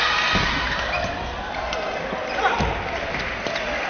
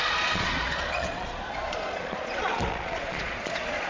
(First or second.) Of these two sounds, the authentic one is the first